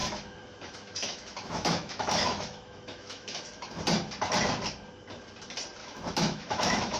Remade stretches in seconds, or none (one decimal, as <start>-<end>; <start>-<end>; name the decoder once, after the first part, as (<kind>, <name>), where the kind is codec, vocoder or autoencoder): 0.0-3.8 (autoencoder, DAC-VAE); 5.8-7.0